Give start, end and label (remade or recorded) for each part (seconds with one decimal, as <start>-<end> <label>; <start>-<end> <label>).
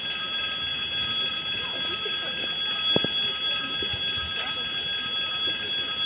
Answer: 0.0-6.1 recorded